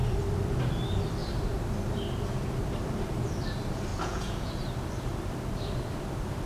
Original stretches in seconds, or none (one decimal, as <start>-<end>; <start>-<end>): 0.0-3.9; 4.5-6.5